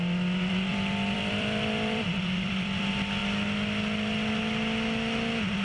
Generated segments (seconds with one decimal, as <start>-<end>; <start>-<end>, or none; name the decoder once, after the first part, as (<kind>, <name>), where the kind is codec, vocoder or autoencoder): 0.7-2.8 (vocoder, BigVGAN v2)